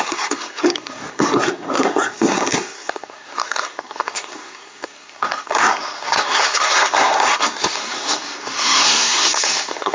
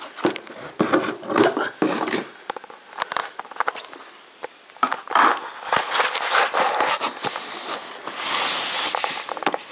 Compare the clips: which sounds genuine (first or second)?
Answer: second